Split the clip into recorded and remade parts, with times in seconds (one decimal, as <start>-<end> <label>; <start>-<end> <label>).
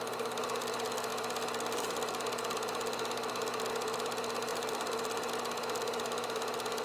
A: 0.0-4.5 recorded; 4.5-5.3 remade; 5.3-6.8 recorded